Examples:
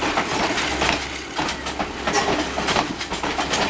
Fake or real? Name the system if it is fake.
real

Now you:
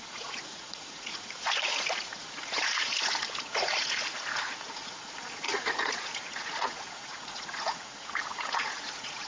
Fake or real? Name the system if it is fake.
fake, vocoder, Vocos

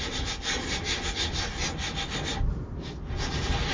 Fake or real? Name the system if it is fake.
real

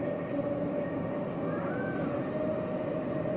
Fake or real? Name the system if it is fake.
real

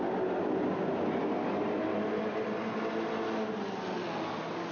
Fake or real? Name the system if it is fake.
real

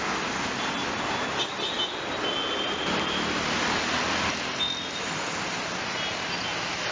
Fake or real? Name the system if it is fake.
real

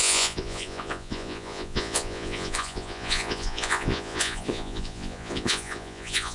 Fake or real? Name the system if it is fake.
fake, vocoder, Vocos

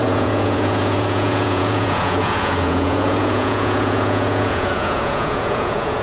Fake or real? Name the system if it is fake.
fake, vocoder, Vocos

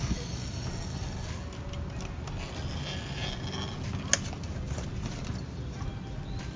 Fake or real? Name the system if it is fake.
real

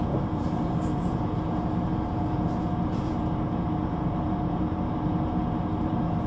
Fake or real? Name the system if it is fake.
fake, vocoder, Vocos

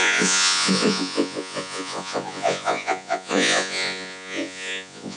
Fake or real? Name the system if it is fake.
fake, vocoder, Vocos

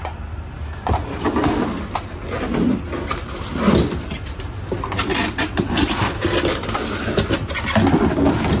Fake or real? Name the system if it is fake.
real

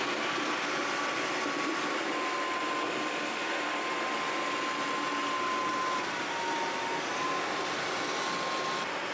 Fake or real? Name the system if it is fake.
real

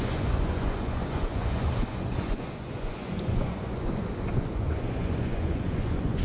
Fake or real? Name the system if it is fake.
fake, vocoder, Vocos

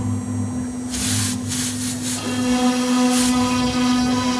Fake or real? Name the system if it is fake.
real